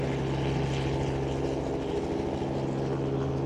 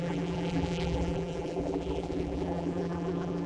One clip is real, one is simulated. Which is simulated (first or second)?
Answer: second